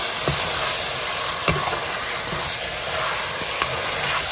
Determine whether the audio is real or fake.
real